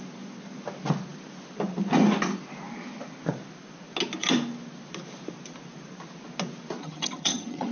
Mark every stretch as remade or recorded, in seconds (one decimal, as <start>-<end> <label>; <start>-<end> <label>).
0.0-6.8 recorded; 6.8-7.7 remade